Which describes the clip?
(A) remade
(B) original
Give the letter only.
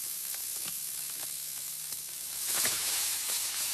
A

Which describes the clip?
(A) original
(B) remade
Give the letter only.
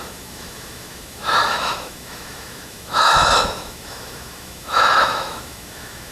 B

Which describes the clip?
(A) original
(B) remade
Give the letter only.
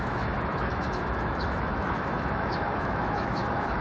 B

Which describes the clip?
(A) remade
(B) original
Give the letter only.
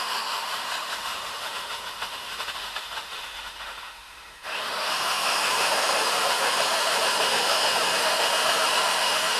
A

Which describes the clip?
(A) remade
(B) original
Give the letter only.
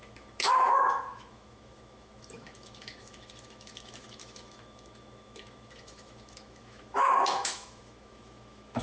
A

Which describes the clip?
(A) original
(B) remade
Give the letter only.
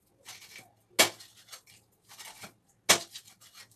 A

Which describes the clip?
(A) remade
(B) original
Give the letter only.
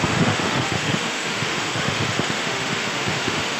A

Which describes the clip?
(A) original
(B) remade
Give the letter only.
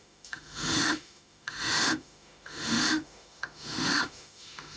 B